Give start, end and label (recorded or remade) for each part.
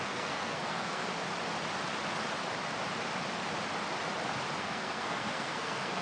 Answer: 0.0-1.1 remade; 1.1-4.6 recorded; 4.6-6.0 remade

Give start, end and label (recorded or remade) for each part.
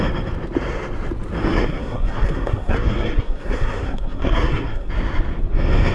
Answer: 0.0-1.4 recorded; 1.4-4.9 remade; 4.9-5.9 recorded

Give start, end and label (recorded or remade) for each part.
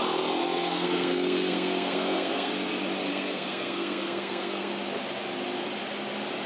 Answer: 0.0-0.4 recorded; 0.4-2.5 remade; 2.5-3.1 recorded; 3.1-4.7 remade; 4.7-6.5 recorded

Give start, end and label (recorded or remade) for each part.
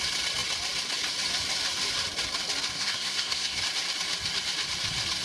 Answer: 0.0-2.7 recorded; 2.7-3.6 remade; 3.6-5.2 recorded